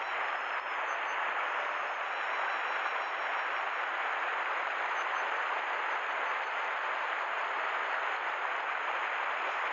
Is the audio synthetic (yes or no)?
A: no